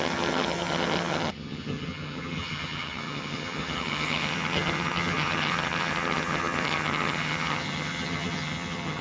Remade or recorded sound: remade